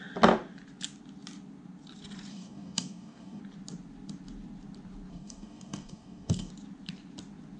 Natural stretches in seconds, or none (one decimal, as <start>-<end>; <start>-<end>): 0.0-2.3; 3.4-5.1; 6.5-7.6